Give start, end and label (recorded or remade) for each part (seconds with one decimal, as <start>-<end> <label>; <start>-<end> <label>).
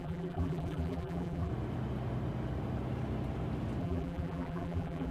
0.0-1.5 remade; 1.5-3.8 recorded; 3.8-5.1 remade